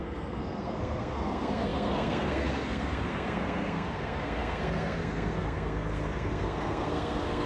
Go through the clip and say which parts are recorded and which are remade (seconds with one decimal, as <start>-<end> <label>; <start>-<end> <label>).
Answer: 0.0-7.5 remade